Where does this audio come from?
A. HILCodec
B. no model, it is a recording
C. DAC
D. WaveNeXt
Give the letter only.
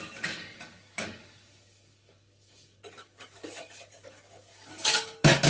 C